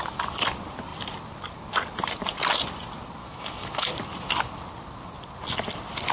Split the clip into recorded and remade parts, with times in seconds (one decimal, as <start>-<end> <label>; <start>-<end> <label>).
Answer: 0.0-3.2 recorded; 3.2-3.9 remade; 3.9-6.1 recorded

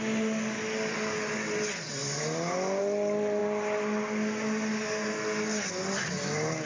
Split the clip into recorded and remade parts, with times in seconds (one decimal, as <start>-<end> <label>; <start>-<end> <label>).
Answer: 0.0-6.7 recorded